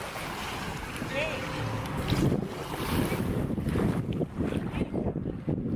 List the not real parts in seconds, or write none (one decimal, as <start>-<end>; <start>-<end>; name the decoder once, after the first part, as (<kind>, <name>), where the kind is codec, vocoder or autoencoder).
none